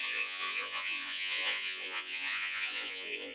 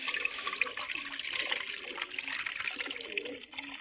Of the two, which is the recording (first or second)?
second